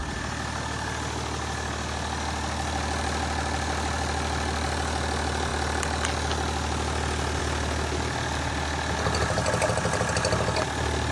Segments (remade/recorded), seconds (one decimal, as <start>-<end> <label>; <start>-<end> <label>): 0.0-11.1 recorded